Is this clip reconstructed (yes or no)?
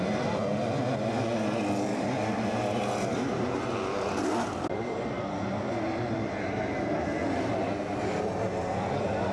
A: no